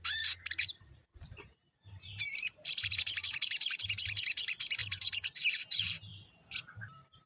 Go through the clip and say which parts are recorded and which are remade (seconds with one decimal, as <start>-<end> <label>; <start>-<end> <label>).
0.0-6.1 remade; 6.1-6.8 recorded; 6.8-7.3 remade